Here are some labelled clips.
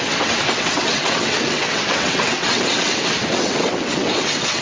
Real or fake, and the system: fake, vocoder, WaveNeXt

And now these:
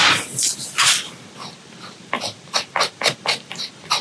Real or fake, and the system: real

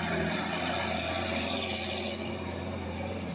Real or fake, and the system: real